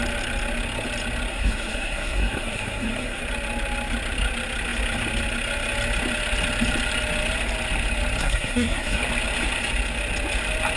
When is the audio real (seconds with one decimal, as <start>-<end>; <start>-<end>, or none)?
0.0-1.3; 3.2-8.2; 9.0-10.8